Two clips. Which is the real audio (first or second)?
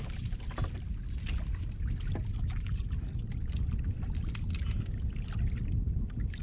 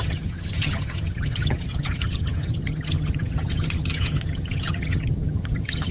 first